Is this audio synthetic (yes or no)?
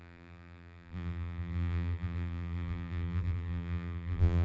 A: yes